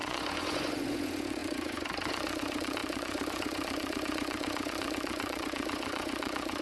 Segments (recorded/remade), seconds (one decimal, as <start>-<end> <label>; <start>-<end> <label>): 0.0-6.6 remade